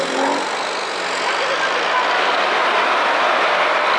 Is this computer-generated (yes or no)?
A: no